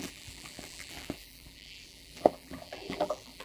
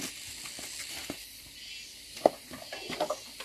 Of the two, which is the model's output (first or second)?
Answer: first